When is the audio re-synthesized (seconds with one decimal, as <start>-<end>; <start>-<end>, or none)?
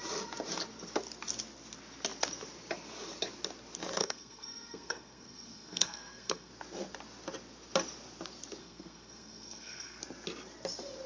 4.0-6.5; 8.6-10.0